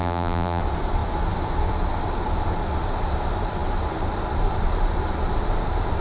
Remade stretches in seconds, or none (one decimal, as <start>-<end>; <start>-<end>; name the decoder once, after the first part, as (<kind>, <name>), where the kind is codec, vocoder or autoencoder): 0.0-0.6 (vocoder, BigVGAN v2)